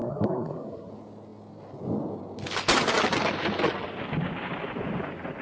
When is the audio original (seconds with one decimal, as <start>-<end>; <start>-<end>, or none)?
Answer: 0.9-5.4